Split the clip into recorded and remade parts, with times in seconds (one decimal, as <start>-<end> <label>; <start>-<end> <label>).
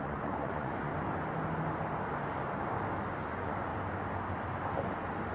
0.0-0.9 remade; 0.9-3.2 recorded; 3.2-3.7 remade; 3.7-5.3 recorded